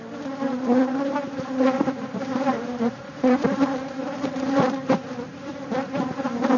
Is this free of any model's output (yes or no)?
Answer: no